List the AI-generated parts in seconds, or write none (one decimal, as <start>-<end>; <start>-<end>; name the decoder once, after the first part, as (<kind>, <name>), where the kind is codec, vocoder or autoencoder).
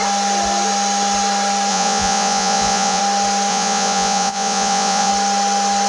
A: 1.7-3.0 (vocoder, Vocos); 3.5-5.1